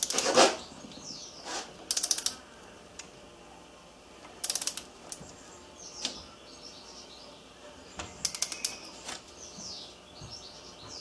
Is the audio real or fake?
real